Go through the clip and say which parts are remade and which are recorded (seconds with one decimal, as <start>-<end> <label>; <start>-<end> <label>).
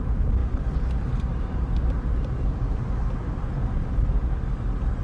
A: 0.0-5.0 recorded